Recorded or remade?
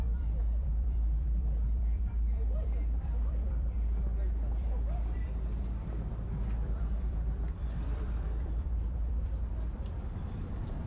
remade